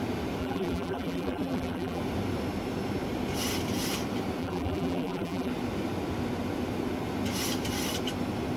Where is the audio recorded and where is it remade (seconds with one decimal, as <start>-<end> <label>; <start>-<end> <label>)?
0.0-0.4 recorded; 0.4-2.0 remade; 2.0-4.4 recorded; 4.4-5.5 remade; 5.5-8.6 recorded